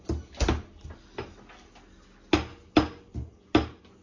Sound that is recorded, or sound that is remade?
recorded